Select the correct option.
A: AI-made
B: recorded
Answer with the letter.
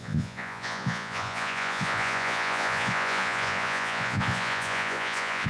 A